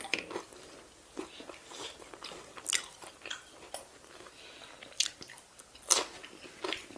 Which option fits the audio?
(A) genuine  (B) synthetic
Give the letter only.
A